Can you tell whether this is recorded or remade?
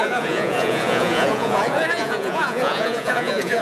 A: remade